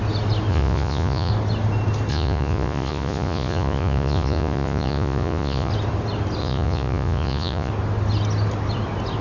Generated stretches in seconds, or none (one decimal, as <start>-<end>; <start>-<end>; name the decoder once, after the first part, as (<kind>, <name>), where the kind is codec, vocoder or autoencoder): 0.5-1.3 (vocoder, Vocos); 2.1-5.7; 6.4-7.7